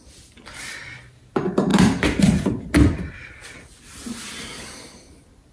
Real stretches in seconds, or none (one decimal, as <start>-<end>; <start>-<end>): 0.0-5.5